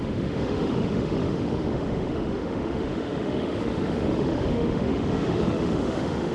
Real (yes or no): no